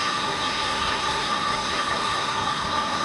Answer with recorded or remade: remade